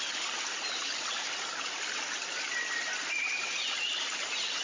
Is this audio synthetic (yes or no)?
no